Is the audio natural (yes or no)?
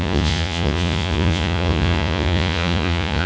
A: no